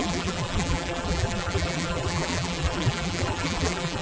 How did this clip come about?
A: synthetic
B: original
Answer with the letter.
A